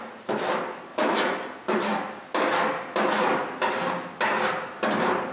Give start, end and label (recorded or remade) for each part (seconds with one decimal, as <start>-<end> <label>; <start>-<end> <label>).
0.0-5.3 recorded